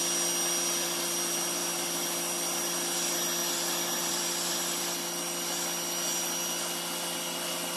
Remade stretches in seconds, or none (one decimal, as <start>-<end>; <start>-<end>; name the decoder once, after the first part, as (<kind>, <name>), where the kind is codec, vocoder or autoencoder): 1.6-2.2 (vocoder, BigVGAN v2); 3.4-4.5